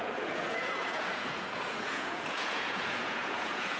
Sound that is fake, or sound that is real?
fake